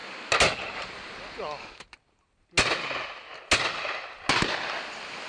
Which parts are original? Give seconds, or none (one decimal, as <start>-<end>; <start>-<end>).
0.0-5.3